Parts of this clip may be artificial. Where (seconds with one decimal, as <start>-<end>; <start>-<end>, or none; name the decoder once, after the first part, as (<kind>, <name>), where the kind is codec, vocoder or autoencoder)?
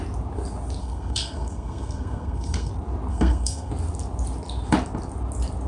0.8-2.7 (codec, SNAC); 3.1-3.7